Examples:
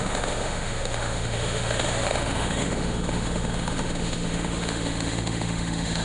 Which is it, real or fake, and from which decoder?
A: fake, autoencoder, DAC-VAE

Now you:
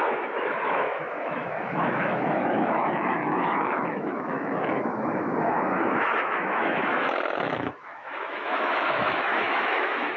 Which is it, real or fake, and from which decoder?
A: fake, autoencoder, DAC-VAE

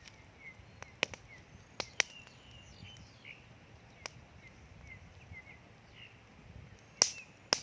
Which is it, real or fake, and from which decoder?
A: real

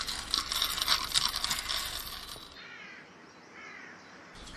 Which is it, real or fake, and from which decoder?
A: real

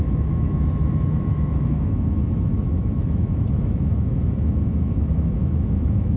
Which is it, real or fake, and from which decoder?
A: fake, autoencoder, DAC-VAE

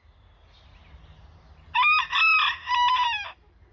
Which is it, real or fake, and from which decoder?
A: real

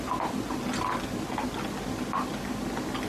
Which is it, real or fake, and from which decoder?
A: real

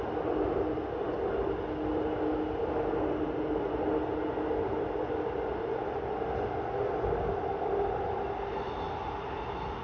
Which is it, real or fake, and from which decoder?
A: real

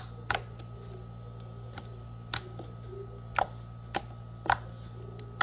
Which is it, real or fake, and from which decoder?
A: real